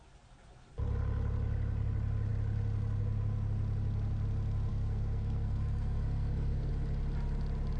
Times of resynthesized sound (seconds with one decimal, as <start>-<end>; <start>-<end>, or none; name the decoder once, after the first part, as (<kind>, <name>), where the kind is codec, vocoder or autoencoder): 4.7-6.7 (codec, SNAC)

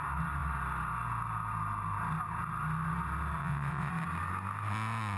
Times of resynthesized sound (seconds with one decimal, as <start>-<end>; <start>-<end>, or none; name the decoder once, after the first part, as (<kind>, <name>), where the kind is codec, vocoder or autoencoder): 3.4-3.9 (vocoder, WaveNeXt)

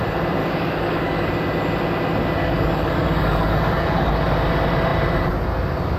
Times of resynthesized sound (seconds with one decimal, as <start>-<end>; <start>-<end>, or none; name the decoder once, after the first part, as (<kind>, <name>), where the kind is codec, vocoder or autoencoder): 0.4-1.3 (codec, DAC); 2.4-4.2

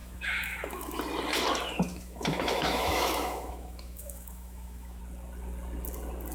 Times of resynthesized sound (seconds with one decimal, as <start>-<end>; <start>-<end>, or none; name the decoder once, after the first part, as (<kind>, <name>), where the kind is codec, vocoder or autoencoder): 0.0-1.0 (autoencoder, DAC-VAE); 1.9-5.0

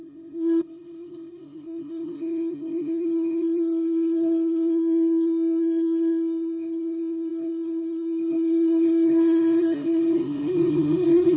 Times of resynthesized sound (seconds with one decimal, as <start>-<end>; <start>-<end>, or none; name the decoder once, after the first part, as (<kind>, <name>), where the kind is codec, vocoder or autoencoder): 0.0-11.4 (codec, SNAC)

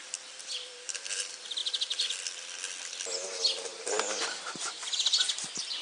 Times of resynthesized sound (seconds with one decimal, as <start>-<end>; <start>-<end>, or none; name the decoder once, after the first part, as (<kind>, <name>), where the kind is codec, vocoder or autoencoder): none